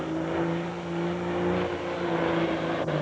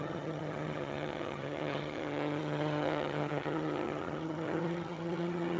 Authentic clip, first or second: first